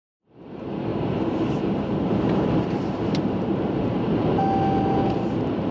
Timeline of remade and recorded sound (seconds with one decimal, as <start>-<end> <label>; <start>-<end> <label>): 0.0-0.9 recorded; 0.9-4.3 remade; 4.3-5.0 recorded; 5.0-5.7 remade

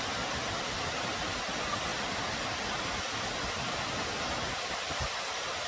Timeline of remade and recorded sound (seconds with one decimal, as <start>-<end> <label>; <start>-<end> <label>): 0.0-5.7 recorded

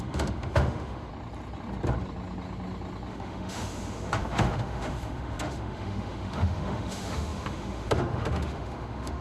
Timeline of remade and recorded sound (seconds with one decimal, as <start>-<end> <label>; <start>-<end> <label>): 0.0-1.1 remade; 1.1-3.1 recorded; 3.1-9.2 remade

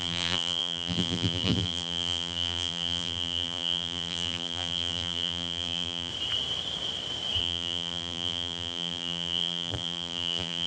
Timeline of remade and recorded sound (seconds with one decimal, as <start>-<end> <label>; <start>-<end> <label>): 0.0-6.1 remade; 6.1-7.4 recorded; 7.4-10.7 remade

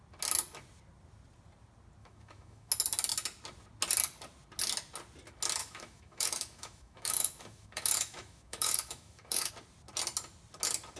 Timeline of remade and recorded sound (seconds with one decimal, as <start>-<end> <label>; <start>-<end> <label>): 0.0-2.0 recorded; 2.0-2.7 remade; 2.7-5.6 recorded; 5.6-9.5 remade; 9.5-11.0 recorded

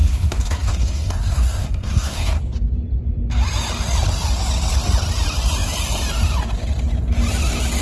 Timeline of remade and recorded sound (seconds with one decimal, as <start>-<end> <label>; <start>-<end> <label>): 0.0-2.4 remade; 2.4-7.8 recorded

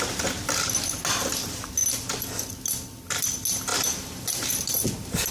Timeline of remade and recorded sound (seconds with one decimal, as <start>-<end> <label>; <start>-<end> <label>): 0.0-1.8 recorded; 1.8-2.6 remade; 2.6-3.7 recorded; 3.7-5.3 remade

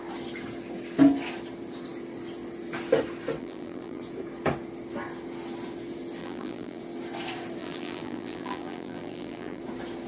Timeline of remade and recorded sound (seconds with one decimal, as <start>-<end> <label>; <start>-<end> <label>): 0.0-3.4 recorded; 3.4-4.0 remade; 4.0-6.2 recorded; 6.2-6.8 remade; 6.8-7.6 recorded; 7.6-9.6 remade; 9.6-10.1 recorded